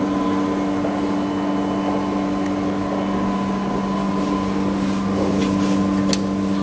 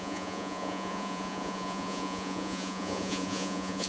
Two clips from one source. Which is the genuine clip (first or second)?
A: first